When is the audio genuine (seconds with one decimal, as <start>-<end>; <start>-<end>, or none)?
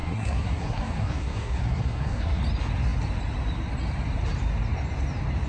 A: 2.4-5.5